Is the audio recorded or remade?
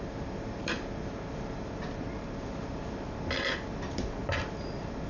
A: recorded